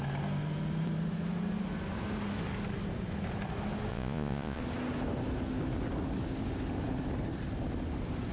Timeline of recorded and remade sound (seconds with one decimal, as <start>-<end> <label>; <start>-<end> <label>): 0.0-3.9 recorded; 3.9-4.6 remade; 4.6-8.3 recorded